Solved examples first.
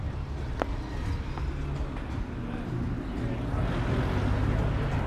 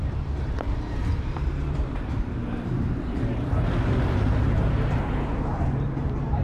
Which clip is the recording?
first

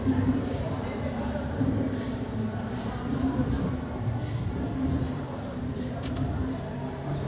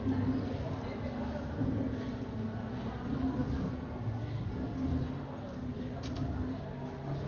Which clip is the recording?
second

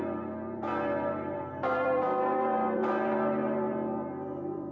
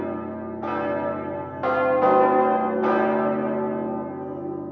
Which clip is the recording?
second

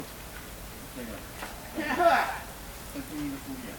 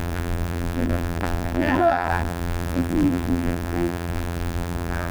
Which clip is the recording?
first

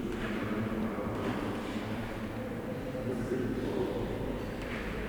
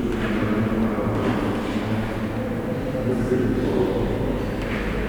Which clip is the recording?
second